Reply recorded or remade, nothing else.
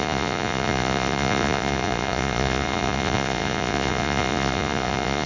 remade